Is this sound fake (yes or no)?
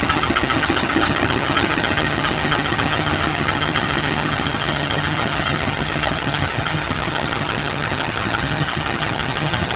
yes